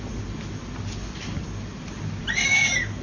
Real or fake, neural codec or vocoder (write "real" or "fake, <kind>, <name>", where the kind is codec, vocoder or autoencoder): real